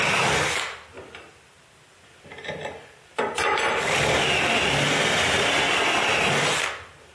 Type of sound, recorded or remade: recorded